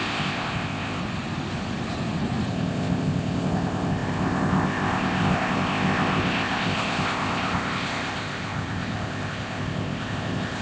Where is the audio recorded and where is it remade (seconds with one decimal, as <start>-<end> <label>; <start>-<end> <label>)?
0.0-1.0 remade; 1.0-2.5 recorded; 2.5-10.6 remade